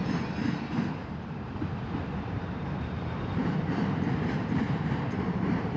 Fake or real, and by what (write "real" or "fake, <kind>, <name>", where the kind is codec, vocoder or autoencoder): fake, vocoder, BigVGAN v2